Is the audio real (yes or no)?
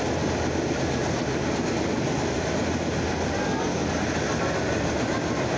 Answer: yes